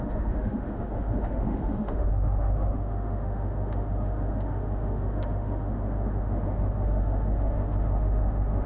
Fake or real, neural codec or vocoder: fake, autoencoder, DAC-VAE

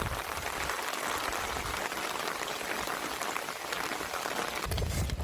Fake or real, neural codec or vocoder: real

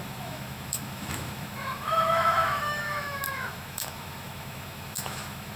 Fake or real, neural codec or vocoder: fake, autoencoder, DAC-VAE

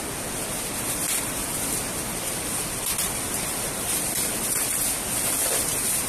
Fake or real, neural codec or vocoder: real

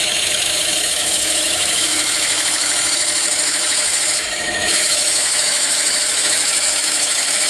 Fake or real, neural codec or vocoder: fake, autoencoder, DAC-VAE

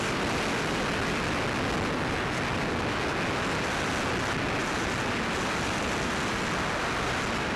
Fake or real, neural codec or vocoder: real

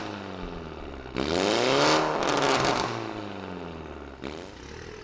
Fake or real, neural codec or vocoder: real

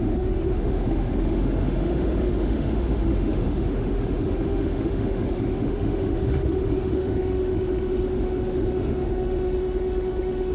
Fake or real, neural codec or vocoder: fake, autoencoder, DAC-VAE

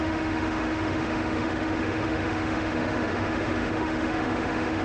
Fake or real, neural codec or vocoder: fake, autoencoder, DAC-VAE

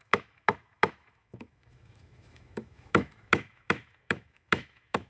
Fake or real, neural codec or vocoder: fake, autoencoder, DAC-VAE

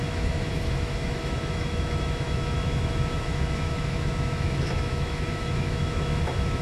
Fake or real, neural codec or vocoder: fake, autoencoder, DAC-VAE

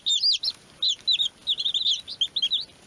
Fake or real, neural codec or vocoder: real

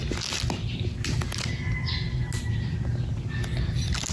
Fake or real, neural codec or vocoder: real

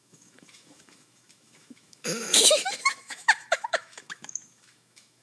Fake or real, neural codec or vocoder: fake, autoencoder, DAC-VAE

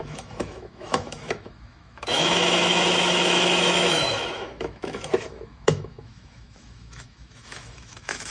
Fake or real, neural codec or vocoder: fake, autoencoder, DAC-VAE